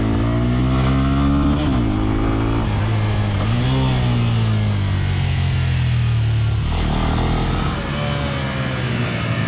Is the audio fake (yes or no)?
no